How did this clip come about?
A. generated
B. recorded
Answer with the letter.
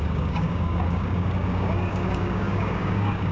A